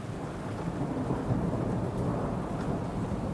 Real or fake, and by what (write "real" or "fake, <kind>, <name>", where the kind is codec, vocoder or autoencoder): real